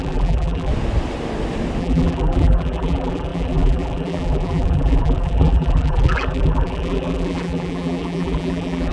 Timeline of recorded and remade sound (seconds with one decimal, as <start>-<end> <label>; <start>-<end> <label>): 0.0-0.7 remade; 0.7-1.8 recorded; 1.8-8.9 remade